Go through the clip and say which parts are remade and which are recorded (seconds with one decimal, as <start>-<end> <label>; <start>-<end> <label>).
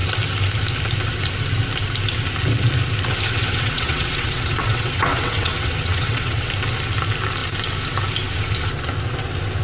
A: 0.0-3.4 recorded; 3.4-6.5 remade; 6.5-9.6 recorded